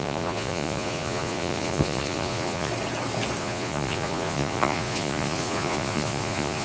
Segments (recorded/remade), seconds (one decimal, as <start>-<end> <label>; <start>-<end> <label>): 0.0-2.7 remade; 2.7-3.4 recorded; 3.4-6.6 remade